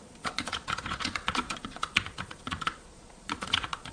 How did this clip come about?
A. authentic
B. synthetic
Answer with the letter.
B